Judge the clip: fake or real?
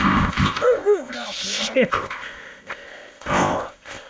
fake